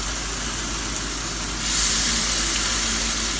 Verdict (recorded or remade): recorded